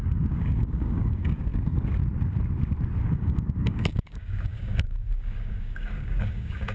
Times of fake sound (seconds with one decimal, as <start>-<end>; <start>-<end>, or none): 0.0-1.5; 3.0-6.7